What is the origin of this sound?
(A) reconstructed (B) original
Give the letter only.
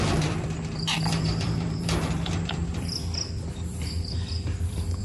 A